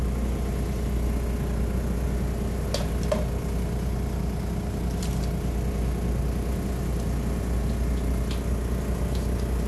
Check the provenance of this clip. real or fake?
real